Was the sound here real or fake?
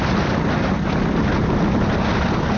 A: real